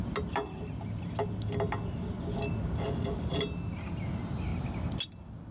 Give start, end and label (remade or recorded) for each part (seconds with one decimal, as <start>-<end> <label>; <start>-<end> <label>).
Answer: 0.0-5.5 recorded